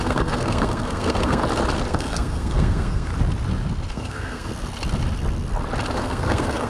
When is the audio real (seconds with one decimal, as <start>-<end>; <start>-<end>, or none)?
1.4-1.9; 3.1-3.9; 4.5-5.9